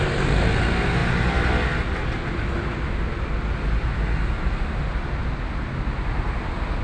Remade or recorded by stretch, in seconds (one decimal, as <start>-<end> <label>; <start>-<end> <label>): 0.0-6.8 recorded